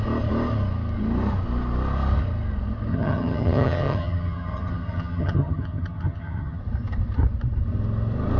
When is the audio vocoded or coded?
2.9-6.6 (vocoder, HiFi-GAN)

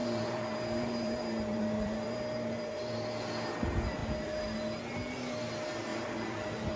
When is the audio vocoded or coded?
0.0-2.8 (vocoder, BigVGAN v2); 5.9-6.8

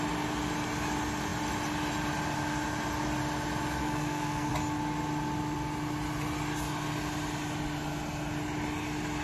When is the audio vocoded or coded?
3.8-4.5 (codec, SNAC)

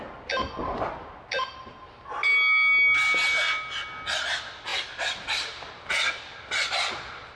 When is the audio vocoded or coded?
4.7-5.7 (vocoder, BigVGAN v2)

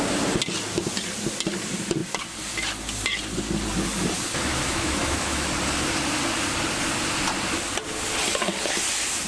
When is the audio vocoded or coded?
4.5-5.5 (autoencoder, DAC-VAE)

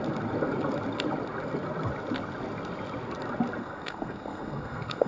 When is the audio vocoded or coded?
3.6-5.1 (codec, SNAC)

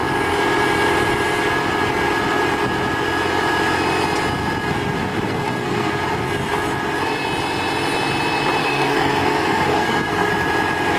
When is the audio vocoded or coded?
5.1-5.9 (codec, SNAC); 8.6-10.3